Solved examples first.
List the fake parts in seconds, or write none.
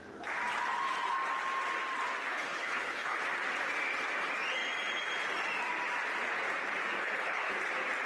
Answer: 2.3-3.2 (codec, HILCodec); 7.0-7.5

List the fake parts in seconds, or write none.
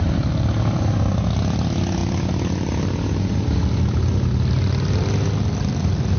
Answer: none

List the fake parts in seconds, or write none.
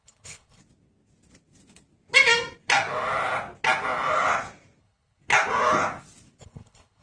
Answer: 0.0-0.6 (codec, HILCodec); 4.8-5.2; 6.4-7.0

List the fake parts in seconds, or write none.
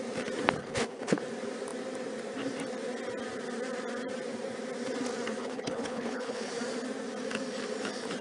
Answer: 0.6-1.2 (codec, HILCodec); 5.4-6.5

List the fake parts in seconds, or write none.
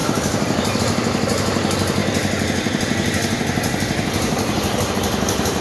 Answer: none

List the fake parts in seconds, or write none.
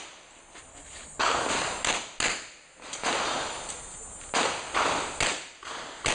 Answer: 0.7-1.4 (codec, HILCodec)